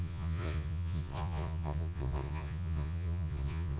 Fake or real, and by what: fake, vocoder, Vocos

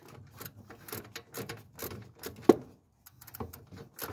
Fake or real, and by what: real